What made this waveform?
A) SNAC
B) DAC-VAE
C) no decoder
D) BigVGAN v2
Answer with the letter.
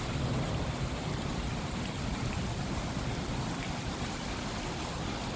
C